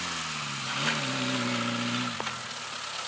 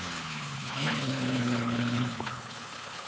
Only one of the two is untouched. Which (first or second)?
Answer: first